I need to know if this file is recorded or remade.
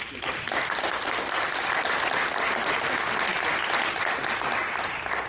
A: recorded